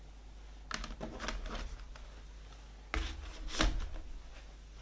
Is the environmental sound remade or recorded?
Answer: recorded